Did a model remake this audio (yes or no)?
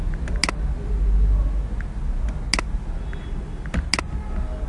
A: no